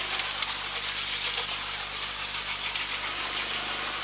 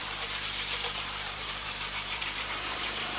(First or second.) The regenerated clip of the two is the second